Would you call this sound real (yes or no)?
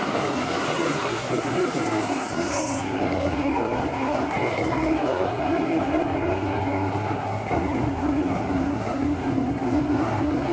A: no